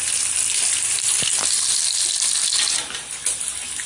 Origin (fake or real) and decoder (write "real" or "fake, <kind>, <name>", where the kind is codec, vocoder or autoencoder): real